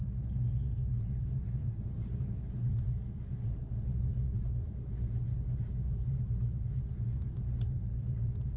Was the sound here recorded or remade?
remade